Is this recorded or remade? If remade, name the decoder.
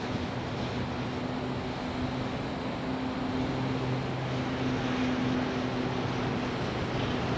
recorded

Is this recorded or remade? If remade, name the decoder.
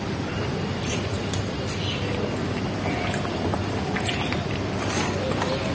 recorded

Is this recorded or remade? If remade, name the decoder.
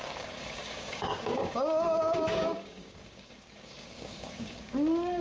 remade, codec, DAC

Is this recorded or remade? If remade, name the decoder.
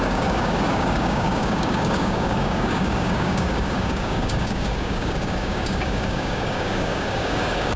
remade, codec, DAC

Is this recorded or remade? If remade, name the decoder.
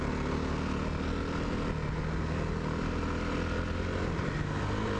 recorded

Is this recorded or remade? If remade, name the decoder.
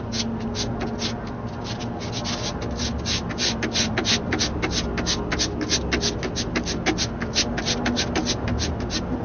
recorded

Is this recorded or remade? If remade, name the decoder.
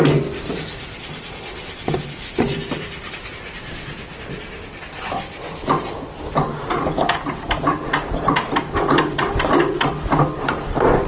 recorded